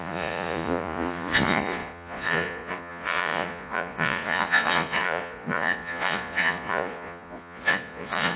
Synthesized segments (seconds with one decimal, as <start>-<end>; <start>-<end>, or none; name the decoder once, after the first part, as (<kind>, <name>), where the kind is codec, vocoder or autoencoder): 0.0-8.4 (vocoder, Vocos)